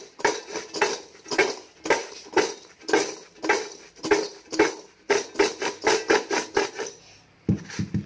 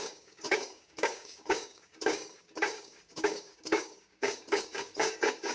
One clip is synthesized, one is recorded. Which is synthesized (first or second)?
second